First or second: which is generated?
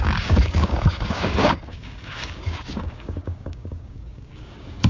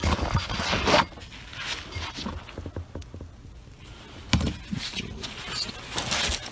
first